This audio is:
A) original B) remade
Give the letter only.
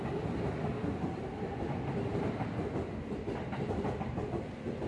A